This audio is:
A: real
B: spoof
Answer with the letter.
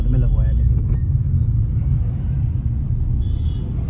A